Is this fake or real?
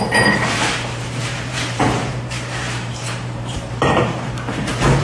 fake